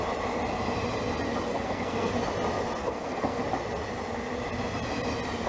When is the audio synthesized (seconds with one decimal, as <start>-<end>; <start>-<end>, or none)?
1.5-2.1; 2.8-3.4